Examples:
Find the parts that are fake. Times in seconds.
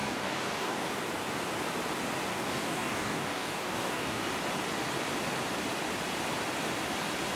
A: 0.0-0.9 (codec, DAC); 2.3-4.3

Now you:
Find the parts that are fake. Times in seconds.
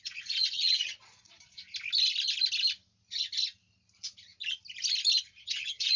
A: 0.0-1.6 (vocoder, Vocos); 5.2-6.0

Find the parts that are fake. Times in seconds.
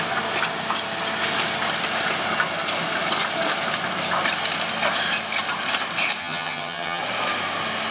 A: 6.2-7.0 (vocoder, HiFi-GAN)